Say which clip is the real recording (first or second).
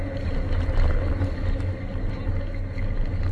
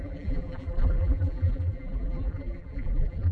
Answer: first